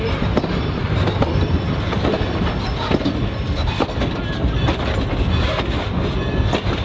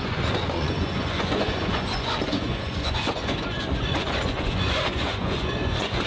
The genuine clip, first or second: first